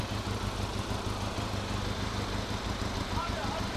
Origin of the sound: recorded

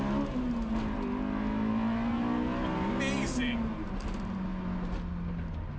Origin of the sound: recorded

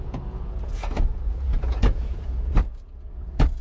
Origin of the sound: remade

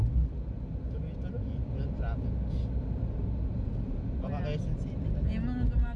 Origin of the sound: recorded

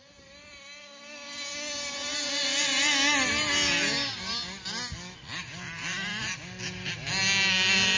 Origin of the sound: recorded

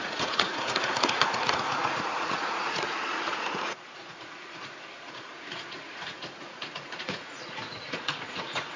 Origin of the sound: remade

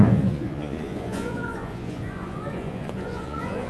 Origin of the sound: remade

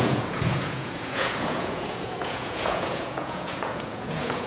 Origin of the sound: remade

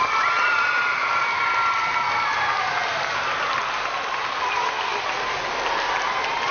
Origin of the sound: recorded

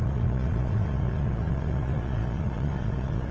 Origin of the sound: remade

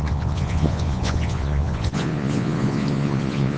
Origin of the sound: remade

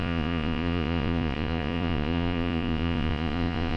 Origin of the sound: remade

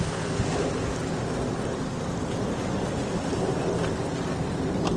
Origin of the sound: recorded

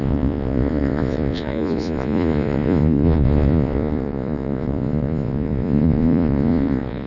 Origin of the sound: remade